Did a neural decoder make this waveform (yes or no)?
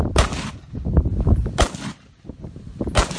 no